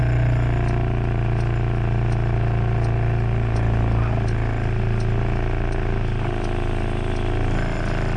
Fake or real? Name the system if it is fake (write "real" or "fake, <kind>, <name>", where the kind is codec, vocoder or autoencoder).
real